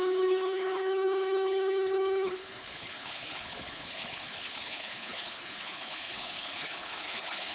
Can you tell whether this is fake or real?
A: fake